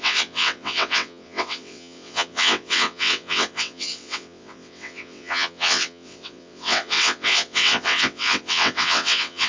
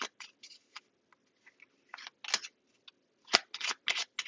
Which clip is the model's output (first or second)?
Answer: first